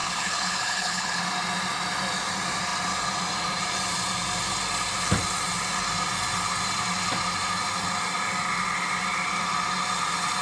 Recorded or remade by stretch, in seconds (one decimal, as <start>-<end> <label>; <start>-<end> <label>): 0.0-1.2 remade; 1.2-10.4 recorded